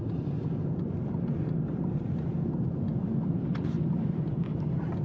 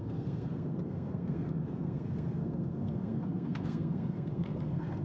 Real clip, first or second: first